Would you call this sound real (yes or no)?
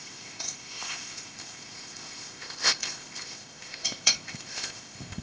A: no